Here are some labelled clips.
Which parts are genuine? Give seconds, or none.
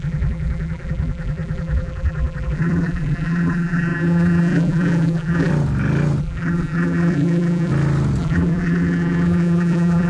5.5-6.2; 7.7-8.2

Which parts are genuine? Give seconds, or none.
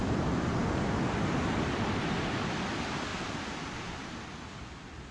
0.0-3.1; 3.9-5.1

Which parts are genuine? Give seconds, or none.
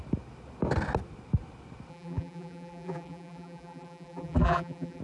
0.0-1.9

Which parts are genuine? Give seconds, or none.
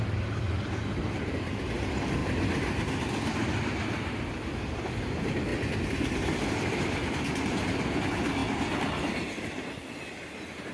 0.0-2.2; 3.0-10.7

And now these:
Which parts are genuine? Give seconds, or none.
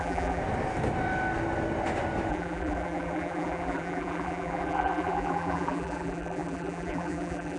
0.4-2.3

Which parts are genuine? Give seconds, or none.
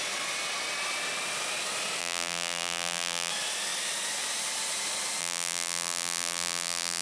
0.0-2.0; 3.3-5.2